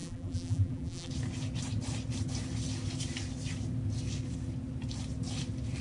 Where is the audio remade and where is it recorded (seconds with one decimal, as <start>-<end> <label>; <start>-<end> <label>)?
0.0-1.1 remade; 1.1-5.8 recorded